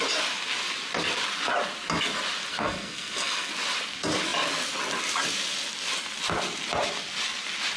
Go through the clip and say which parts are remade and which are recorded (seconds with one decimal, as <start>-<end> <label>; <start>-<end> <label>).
0.0-2.5 recorded; 2.5-3.5 remade; 3.5-7.8 recorded